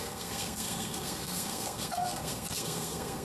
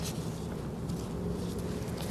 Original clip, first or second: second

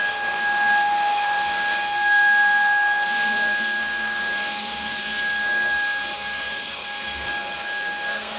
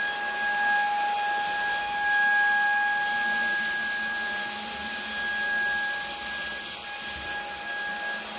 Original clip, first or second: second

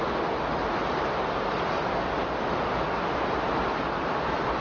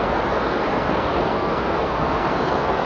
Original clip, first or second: first